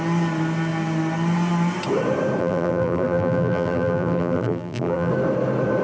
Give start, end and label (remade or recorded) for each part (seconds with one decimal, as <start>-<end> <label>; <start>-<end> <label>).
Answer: 0.0-2.4 recorded; 2.4-5.1 remade; 5.1-5.8 recorded